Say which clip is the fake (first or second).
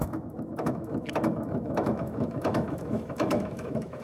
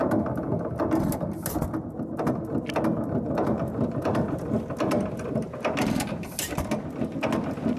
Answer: first